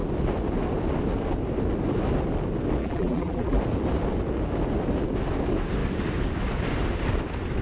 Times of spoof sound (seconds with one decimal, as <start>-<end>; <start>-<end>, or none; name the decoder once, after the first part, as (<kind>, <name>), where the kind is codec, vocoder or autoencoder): 2.8-3.6 (vocoder, BigVGAN v2)